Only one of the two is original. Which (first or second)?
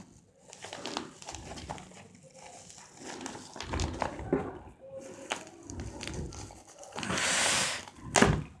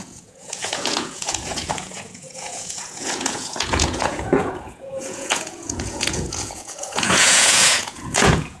first